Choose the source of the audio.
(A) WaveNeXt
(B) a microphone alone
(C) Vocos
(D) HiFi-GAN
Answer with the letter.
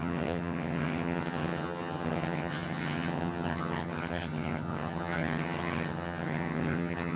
D